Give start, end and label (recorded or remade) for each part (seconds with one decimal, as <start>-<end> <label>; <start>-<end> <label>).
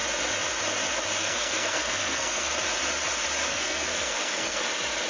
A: 0.0-1.2 recorded; 1.2-2.5 remade; 2.5-3.5 recorded; 3.5-4.6 remade; 4.6-5.1 recorded